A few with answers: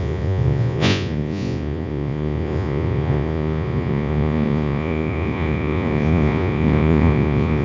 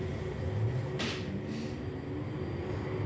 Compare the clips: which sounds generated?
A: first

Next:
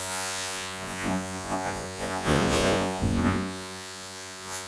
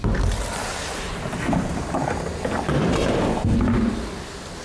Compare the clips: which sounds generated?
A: first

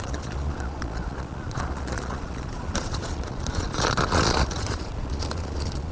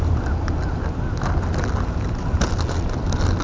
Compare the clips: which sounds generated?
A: first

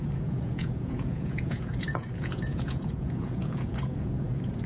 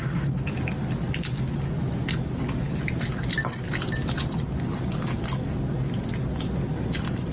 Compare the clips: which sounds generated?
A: first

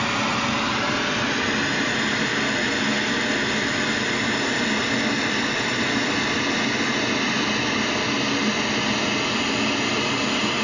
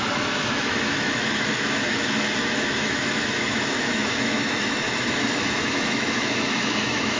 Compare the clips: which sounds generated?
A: second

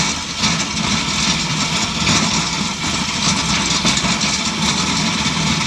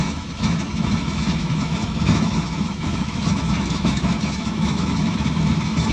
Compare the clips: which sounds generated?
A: second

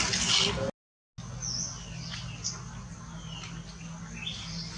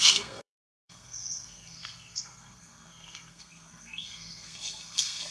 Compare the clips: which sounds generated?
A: second